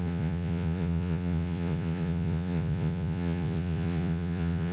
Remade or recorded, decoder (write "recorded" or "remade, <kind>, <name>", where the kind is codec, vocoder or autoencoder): remade, vocoder, Vocos